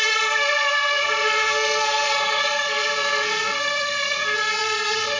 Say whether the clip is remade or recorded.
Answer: remade